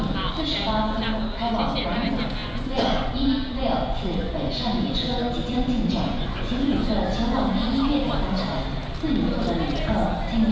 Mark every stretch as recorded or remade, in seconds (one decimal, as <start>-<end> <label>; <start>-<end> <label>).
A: 0.0-2.4 recorded; 2.4-6.9 remade; 6.9-10.5 recorded